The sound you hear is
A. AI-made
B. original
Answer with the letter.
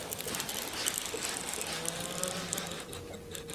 B